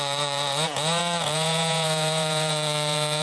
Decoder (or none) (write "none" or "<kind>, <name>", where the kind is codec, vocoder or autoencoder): vocoder, Vocos